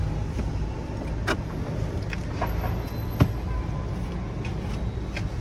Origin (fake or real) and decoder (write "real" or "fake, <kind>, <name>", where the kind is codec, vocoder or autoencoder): real